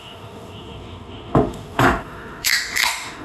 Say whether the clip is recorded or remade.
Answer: remade